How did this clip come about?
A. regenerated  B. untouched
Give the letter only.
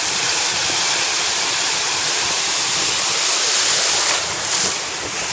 A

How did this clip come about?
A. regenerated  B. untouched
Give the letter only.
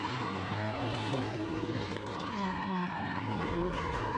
A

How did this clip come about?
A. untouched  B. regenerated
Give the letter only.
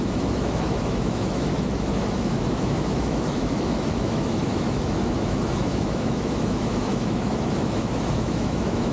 B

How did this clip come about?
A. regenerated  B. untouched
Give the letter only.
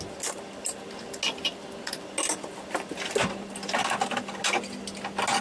B